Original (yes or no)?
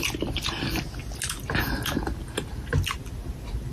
yes